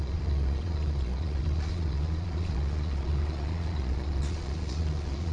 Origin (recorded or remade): remade